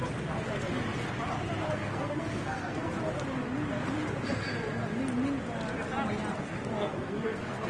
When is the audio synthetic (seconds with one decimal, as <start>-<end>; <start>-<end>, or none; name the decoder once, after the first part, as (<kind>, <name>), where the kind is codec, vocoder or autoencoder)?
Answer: 1.7-2.9 (codec, SNAC); 6.3-7.7

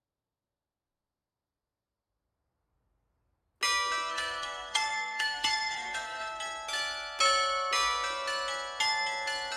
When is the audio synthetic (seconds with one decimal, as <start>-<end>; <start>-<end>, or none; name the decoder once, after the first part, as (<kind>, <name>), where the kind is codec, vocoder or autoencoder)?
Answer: 4.1-6.4 (codec, SNAC)

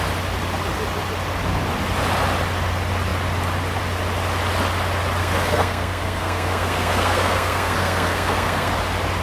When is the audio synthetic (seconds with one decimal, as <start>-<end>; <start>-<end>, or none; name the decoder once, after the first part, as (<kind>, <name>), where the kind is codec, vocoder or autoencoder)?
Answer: 5.2-8.7 (codec, SNAC)

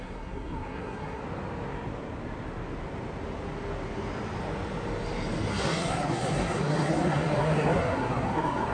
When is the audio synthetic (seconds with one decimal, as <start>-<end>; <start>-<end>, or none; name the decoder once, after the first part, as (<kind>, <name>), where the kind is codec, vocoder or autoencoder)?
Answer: 0.0-1.2 (codec, SNAC); 5.5-8.7

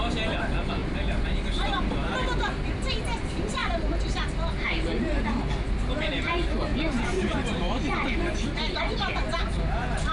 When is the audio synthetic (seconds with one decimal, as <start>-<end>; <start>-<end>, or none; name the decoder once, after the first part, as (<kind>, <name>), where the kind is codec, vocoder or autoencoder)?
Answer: 0.8-1.8 (vocoder, BigVGAN v2); 6.7-8.8

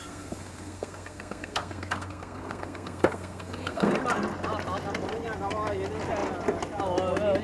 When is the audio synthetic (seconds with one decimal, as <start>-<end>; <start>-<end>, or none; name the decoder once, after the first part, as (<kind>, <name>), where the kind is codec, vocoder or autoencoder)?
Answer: 0.0-3.9 (codec, SNAC)

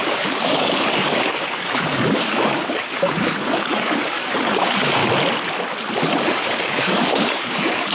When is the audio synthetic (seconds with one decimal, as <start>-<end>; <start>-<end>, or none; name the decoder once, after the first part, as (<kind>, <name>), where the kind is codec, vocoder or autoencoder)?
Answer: 0.0-5.0 (codec, DAC); 6.3-7.9

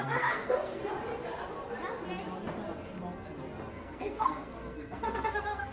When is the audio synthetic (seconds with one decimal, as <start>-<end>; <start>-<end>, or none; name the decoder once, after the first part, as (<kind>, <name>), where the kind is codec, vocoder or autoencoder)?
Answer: 0.0-0.8 (codec, SNAC); 3.7-5.7